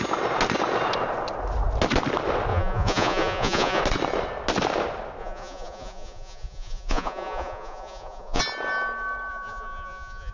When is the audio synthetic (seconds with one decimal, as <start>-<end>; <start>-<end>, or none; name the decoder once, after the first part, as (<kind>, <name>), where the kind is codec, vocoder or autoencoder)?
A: 2.5-3.8 (vocoder, Vocos); 5.2-8.4; 9.3-10.3